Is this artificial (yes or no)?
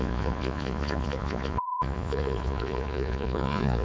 yes